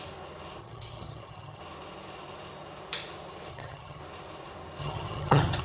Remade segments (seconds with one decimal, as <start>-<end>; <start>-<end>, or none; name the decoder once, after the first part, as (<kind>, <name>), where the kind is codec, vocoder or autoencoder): 0.6-1.6 (vocoder, HiFi-GAN); 3.5-4.0; 4.8-5.6